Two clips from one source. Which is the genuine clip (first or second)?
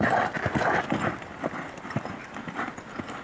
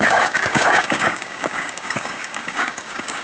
first